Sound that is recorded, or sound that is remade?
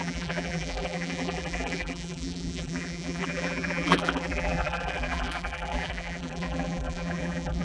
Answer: remade